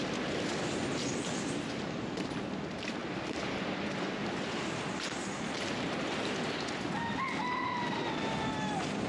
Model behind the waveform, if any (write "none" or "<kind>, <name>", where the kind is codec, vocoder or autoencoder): none